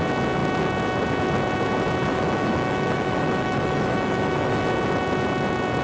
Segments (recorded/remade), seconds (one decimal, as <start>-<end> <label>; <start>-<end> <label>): 0.0-2.1 recorded; 2.1-4.6 remade; 4.6-5.8 recorded